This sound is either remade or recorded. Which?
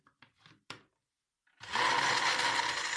recorded